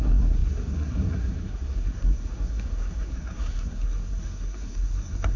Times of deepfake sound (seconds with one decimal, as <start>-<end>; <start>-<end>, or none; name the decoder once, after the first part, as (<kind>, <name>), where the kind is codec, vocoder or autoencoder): 0.0-5.4 (codec, SNAC)

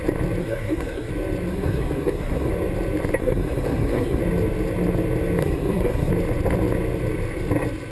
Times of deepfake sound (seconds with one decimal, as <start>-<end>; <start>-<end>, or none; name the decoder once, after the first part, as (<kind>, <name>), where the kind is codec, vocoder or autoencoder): 0.4-1.1 (codec, SNAC); 1.5-2.5; 3.2-4.2; 5.4-6.1

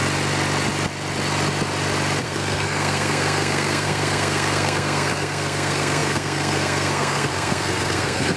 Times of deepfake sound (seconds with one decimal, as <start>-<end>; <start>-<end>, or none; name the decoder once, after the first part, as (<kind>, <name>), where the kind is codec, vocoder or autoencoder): 2.2-8.4 (codec, SNAC)

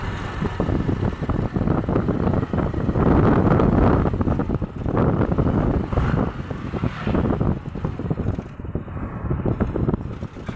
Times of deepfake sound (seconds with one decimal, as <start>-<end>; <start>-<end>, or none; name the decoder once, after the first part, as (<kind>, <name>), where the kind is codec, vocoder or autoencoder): none

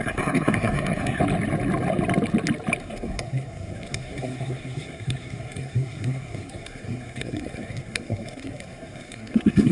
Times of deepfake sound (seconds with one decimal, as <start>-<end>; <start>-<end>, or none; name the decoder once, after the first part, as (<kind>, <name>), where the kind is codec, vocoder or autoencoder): 0.0-1.2 (codec, SNAC); 2.8-9.7

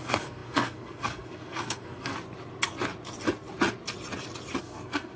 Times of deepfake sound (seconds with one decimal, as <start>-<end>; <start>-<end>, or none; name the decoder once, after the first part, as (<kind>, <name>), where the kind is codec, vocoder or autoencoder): 0.0-2.1 (codec, SNAC); 4.6-5.2